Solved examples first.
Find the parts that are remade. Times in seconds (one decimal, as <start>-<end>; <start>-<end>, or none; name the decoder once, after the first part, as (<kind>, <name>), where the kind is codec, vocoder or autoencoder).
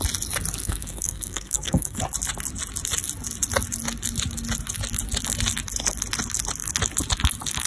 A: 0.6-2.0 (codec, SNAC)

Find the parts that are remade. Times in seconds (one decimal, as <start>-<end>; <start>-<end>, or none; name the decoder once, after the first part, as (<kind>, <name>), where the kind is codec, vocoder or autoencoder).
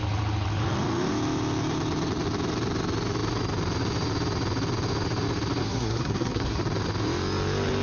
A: 5.6-6.6 (codec, SNAC)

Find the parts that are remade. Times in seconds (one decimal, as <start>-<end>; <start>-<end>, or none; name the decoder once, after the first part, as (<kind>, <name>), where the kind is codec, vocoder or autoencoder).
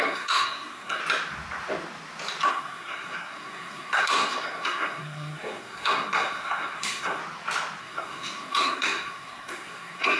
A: 0.0-1.0 (codec, SNAC); 2.5-7.2; 7.8-10.2